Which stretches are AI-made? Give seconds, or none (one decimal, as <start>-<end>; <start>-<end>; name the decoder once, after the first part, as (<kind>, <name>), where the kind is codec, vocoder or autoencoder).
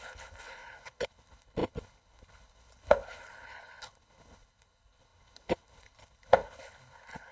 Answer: 0.0-7.3 (codec, HILCodec)